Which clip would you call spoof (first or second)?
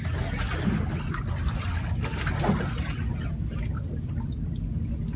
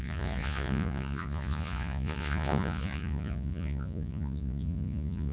second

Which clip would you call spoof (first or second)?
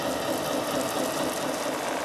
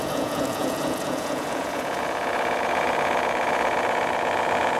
second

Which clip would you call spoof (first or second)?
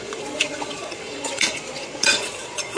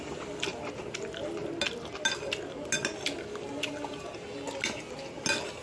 first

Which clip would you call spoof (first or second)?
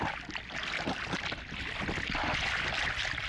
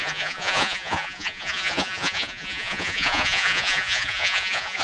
second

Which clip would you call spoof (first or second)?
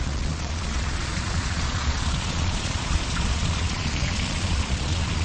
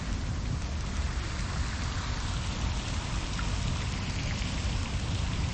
first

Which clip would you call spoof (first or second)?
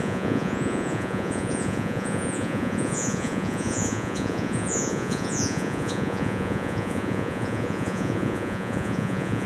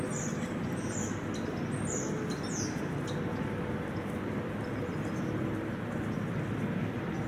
first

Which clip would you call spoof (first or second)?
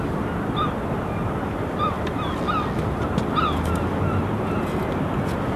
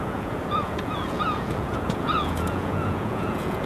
second